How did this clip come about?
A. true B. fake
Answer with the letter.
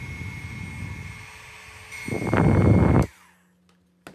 A